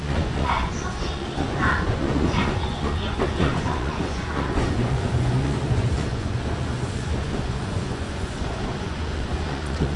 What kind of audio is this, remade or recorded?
remade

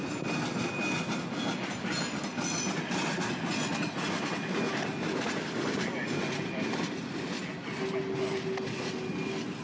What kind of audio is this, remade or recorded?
recorded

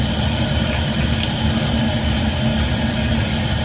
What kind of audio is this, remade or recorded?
recorded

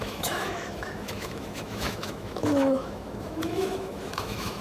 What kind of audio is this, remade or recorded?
remade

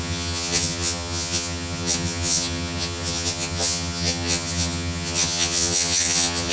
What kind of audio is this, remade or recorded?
remade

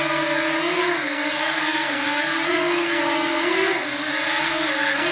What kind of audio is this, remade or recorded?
remade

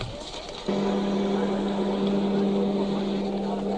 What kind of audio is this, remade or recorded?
recorded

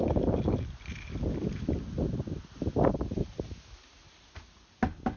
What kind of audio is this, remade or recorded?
recorded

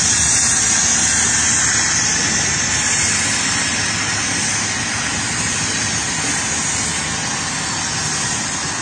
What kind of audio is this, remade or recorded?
recorded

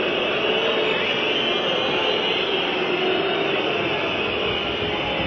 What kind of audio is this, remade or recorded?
recorded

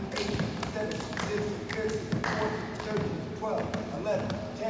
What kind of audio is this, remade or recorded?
recorded